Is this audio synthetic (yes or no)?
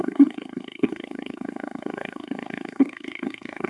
yes